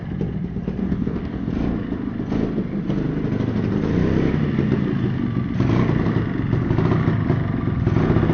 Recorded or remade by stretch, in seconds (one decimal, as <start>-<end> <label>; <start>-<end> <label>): 0.0-0.8 recorded; 0.8-1.5 remade; 1.5-8.3 recorded